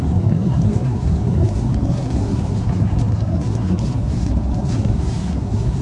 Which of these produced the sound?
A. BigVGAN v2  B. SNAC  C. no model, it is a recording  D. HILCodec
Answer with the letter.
B